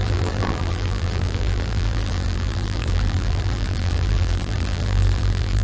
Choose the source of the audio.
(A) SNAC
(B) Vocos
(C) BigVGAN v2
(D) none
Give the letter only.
C